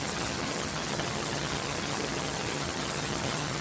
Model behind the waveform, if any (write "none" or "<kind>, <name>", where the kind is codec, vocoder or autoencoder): vocoder, HiFi-GAN